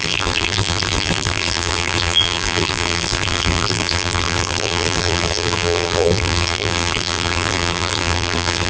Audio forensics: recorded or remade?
remade